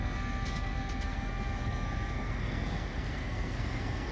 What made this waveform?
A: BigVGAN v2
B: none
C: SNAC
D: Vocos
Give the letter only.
C